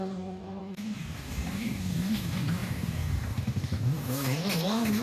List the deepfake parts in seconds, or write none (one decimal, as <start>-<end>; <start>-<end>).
0.0-5.0